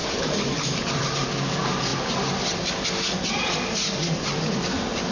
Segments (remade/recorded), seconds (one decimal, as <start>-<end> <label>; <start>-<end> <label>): 0.0-1.3 remade; 1.3-5.1 recorded